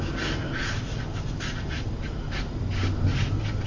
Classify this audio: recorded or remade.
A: recorded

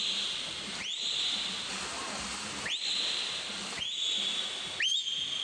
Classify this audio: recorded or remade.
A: recorded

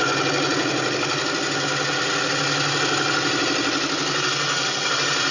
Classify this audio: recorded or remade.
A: recorded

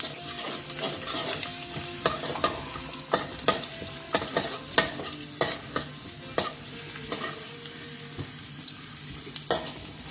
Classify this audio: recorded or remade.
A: recorded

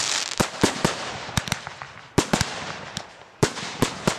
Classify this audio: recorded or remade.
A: remade